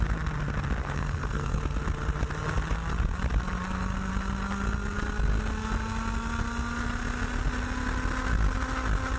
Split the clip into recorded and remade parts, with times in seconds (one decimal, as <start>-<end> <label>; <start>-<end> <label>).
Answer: 0.0-0.8 recorded; 0.8-1.6 remade; 1.6-9.2 recorded